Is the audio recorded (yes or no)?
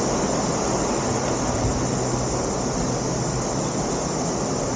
yes